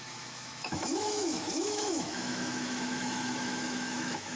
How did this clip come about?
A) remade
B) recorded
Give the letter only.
A